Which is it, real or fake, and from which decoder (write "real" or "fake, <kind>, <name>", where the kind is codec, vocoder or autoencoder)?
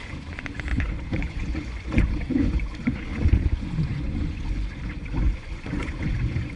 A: fake, vocoder, Vocos